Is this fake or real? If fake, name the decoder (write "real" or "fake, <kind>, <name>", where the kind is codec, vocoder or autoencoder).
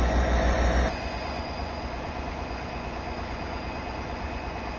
fake, vocoder, Vocos